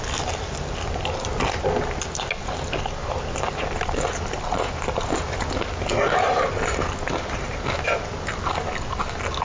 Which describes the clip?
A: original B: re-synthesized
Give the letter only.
A